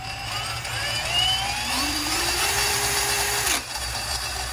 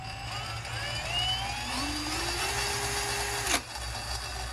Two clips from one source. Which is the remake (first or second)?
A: first